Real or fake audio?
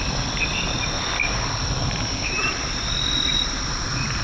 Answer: real